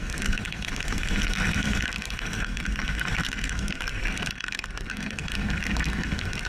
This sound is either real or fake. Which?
fake